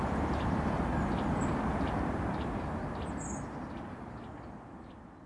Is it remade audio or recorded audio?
recorded